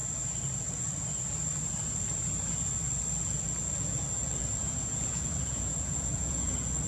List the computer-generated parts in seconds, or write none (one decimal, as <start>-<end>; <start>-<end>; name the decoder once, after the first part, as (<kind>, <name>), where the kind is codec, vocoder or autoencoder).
4.6-6.5 (vocoder, Vocos)